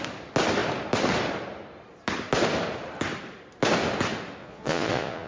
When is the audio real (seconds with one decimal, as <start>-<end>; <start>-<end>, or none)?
0.0-4.4